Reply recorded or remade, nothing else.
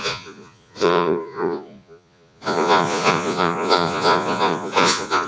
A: remade